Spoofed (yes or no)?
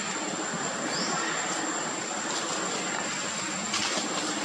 no